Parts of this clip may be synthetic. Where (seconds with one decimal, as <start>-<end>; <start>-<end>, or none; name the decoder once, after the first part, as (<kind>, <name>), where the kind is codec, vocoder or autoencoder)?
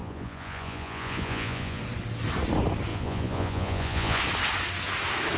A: 0.0-1.8 (vocoder, Vocos); 2.9-4.2